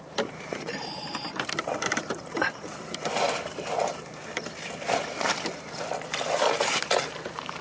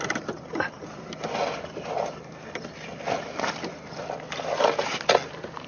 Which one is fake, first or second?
first